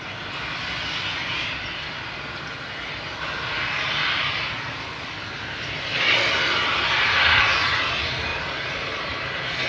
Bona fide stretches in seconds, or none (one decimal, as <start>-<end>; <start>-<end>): 0.0-9.7